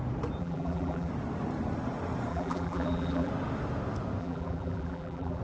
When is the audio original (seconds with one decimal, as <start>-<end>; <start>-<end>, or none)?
0.0-0.4; 1.1-2.3; 3.3-4.2